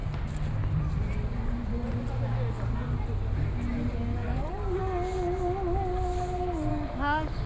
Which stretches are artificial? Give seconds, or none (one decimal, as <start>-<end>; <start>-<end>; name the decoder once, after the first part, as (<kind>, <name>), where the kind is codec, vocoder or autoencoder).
4.1-4.8 (codec, DAC); 6.7-7.5